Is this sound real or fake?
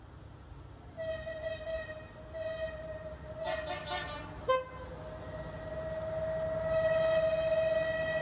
real